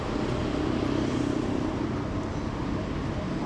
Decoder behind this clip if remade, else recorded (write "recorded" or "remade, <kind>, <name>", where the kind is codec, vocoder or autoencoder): recorded